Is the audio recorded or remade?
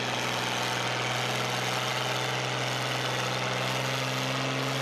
recorded